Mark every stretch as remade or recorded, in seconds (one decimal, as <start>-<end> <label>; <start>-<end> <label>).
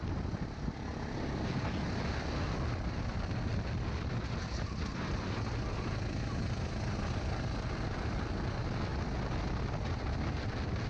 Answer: 0.0-10.9 recorded